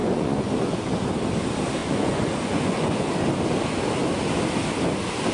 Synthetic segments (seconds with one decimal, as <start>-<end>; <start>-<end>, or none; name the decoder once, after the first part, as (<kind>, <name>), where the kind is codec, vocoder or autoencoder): 0.0-0.9 (vocoder, Vocos); 1.8-3.1